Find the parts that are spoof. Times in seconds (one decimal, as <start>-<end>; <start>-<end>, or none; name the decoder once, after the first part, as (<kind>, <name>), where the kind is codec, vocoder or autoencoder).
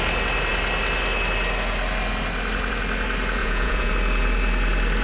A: 3.4-3.9 (vocoder, Vocos)